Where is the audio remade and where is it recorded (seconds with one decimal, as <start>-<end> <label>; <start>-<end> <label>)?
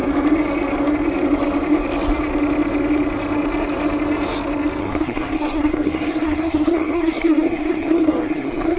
0.0-4.8 recorded; 4.8-8.8 remade